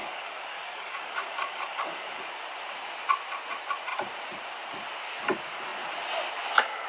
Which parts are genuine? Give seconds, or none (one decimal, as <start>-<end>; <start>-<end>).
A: 2.2-6.9